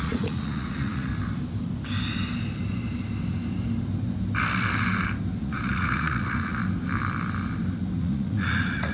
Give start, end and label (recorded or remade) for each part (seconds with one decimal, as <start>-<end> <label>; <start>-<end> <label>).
0.0-1.1 remade; 1.1-5.4 recorded; 5.4-6.6 remade; 6.6-8.0 recorded; 8.0-8.9 remade